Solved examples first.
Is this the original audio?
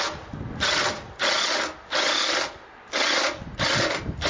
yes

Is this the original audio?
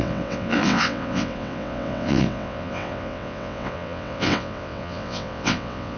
no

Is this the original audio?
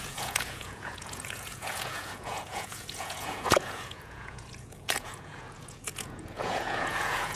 no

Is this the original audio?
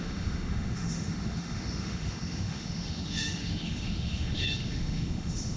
no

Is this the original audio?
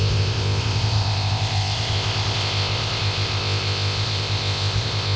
no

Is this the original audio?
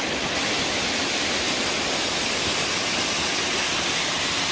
yes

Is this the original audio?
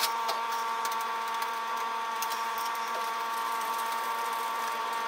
no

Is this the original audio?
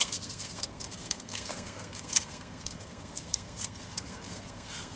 no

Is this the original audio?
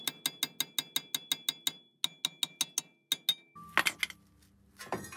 yes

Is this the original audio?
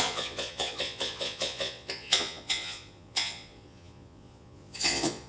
no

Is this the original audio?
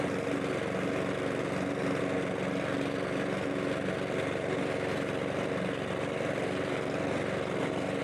yes